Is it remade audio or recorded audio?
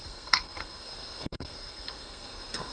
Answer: remade